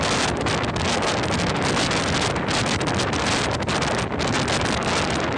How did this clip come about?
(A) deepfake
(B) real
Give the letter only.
B